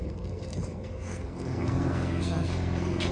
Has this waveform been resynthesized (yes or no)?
yes